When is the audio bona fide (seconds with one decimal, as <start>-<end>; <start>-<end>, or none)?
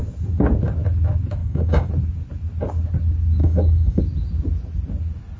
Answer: 0.0-1.4; 1.9-3.4; 4.0-5.4